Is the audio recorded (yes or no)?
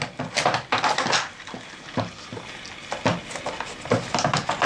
yes